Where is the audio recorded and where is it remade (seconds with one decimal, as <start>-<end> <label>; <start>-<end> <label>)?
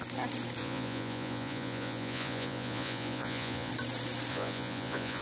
0.0-0.6 recorded; 0.6-3.7 remade; 3.7-4.3 recorded; 4.3-5.2 remade